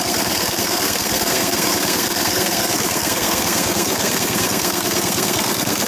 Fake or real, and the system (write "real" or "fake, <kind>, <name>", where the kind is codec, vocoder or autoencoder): fake, codec, SNAC